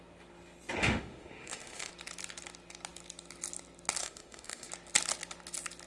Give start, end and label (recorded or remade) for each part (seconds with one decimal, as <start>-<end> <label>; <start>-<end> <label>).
0.0-0.8 recorded; 0.8-1.9 remade; 1.9-4.0 recorded; 4.0-4.7 remade; 4.7-5.9 recorded